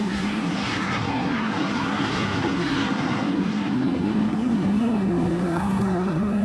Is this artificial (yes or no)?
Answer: yes